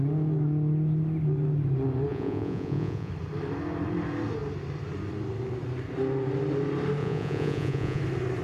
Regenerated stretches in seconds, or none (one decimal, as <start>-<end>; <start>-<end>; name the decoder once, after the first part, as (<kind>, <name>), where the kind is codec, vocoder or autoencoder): 2.1-3.1 (vocoder, Vocos); 7.0-8.0